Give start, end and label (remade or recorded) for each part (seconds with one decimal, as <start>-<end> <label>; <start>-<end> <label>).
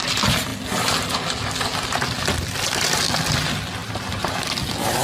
0.0-3.8 recorded; 3.8-4.5 remade; 4.5-5.0 recorded